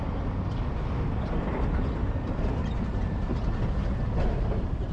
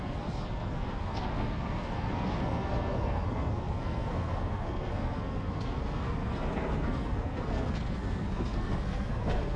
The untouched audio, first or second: first